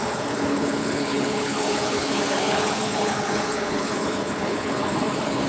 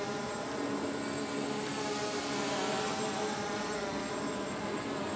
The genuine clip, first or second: second